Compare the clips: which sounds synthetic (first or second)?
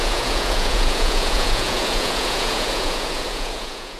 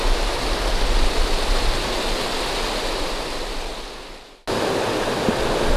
first